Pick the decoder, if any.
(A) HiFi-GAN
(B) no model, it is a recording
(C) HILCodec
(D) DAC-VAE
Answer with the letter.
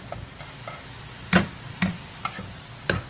B